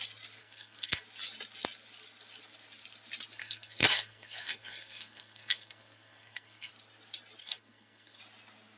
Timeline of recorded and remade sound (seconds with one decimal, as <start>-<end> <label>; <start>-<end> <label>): 0.0-0.4 recorded; 0.4-1.0 remade; 1.0-3.4 recorded; 3.4-6.7 remade; 6.7-7.4 recorded; 7.4-8.2 remade; 8.2-8.8 recorded